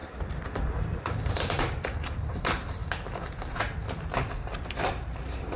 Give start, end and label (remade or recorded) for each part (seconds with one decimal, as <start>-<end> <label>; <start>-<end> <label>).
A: 0.0-2.8 remade; 2.8-3.9 recorded; 3.9-5.6 remade